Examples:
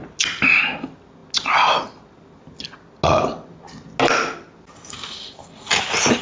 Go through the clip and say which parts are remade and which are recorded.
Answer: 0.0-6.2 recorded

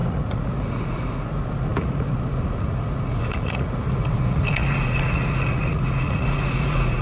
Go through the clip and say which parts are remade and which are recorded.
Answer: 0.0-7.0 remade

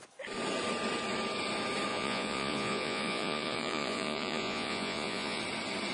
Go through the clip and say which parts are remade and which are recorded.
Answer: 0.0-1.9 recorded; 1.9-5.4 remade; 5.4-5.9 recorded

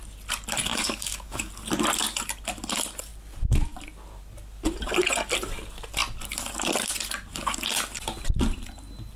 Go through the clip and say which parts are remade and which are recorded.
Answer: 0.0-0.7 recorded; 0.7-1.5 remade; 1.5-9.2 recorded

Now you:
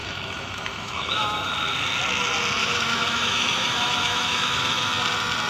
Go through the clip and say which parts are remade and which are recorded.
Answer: 0.0-1.5 remade; 1.5-2.6 recorded; 2.6-4.9 remade; 4.9-5.5 recorded

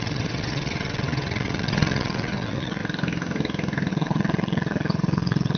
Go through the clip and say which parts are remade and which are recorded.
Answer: 0.0-2.8 remade; 2.8-3.9 recorded; 3.9-5.6 remade

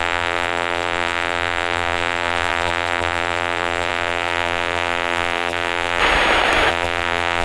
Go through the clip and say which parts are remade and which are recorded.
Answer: 0.0-6.0 remade; 6.0-6.7 recorded; 6.7-7.4 remade